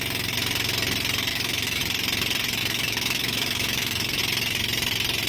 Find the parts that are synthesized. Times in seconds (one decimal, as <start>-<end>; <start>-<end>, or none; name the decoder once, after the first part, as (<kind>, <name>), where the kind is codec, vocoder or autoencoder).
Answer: 1.3-1.8 (autoencoder, DAC-VAE); 2.6-4.2

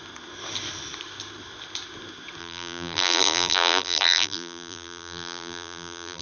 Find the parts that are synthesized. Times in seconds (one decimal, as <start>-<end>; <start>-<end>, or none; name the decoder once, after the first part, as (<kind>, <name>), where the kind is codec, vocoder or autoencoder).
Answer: 2.4-6.2 (vocoder, BigVGAN v2)